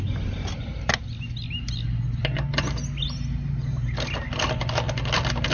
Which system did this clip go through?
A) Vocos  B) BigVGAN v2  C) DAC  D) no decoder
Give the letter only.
D